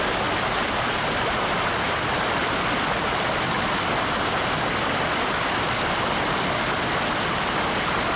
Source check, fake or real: real